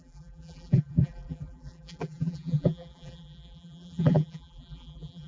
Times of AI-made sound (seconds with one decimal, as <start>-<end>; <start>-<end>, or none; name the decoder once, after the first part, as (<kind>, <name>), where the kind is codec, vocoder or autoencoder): 0.0-5.3 (vocoder, BigVGAN v2)